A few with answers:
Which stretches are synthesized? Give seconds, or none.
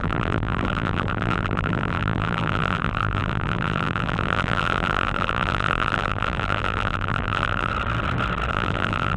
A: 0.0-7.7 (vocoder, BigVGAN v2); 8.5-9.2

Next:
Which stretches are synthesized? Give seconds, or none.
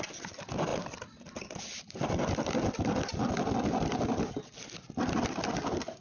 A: none